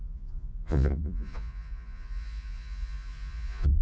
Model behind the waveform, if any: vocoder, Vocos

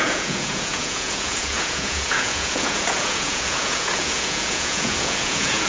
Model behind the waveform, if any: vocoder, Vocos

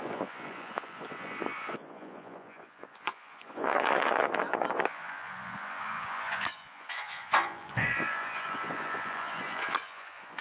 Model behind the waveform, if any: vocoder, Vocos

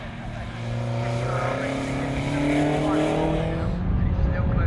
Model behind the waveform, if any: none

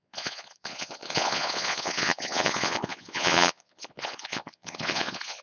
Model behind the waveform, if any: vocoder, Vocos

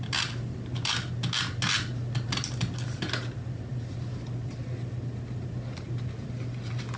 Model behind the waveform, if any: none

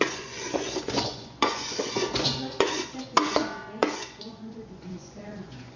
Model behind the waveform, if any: vocoder, Vocos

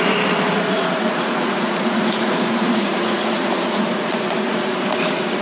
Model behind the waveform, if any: vocoder, Vocos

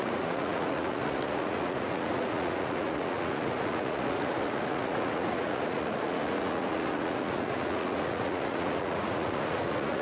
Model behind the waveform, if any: vocoder, Vocos